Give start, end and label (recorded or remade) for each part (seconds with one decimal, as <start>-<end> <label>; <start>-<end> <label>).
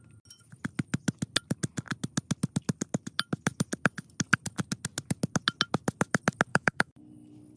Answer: 0.0-6.5 recorded; 6.5-7.0 remade; 7.0-7.6 recorded